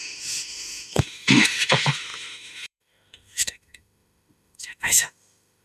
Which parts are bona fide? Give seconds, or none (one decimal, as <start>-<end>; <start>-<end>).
none